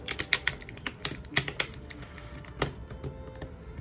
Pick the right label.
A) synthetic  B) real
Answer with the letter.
B